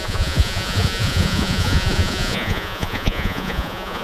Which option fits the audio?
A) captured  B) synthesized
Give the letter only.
B